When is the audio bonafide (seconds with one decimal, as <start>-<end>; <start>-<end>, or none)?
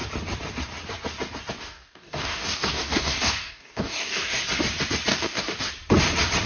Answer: 0.0-1.6; 4.4-5.1; 5.7-6.5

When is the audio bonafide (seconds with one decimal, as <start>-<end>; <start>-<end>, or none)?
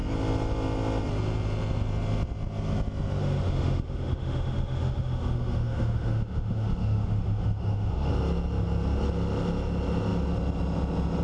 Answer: 0.0-3.2; 8.1-11.2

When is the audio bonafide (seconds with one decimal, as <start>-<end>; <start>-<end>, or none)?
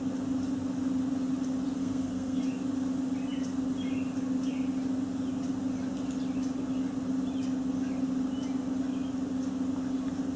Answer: 0.0-1.8; 2.4-10.4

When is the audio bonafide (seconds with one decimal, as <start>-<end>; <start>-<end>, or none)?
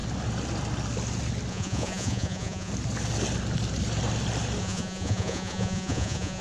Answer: 0.0-1.5; 2.7-4.6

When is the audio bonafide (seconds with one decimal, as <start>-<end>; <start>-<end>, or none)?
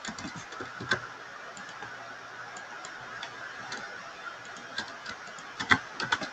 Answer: 0.0-6.3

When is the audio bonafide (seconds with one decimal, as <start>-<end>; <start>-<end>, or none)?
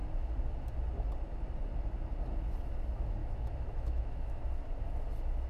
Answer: 0.0-3.2; 4.4-5.5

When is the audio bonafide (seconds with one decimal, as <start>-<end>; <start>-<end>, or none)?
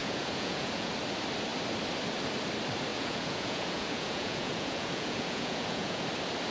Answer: 0.9-2.9; 6.0-6.5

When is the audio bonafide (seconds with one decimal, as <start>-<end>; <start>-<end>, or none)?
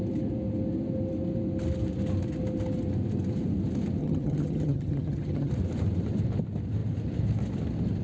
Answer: 0.0-4.0; 5.5-8.0